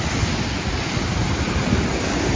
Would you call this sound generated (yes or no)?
no